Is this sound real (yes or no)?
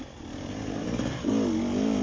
yes